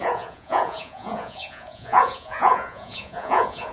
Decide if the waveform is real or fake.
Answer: fake